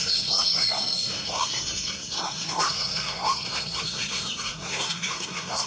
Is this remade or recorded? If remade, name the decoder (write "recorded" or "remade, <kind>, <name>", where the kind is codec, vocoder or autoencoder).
remade, codec, SNAC